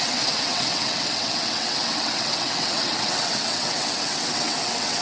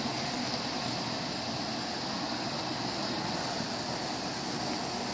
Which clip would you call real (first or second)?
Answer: second